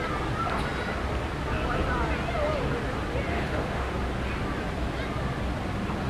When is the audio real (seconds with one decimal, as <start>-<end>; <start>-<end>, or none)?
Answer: 0.0-3.3; 3.9-6.1